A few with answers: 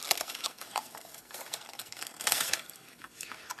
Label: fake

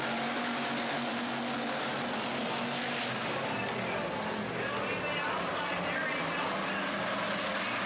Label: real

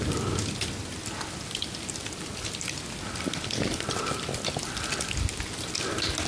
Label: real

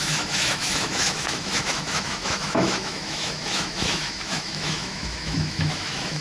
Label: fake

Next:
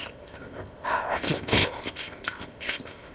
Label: fake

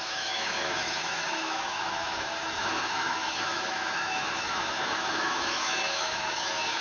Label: fake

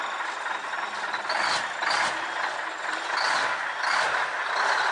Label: real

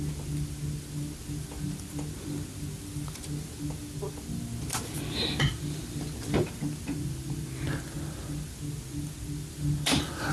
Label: fake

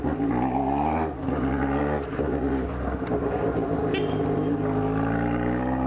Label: real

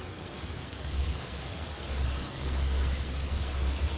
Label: fake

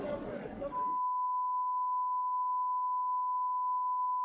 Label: fake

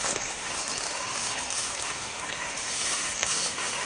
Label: fake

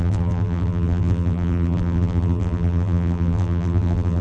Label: fake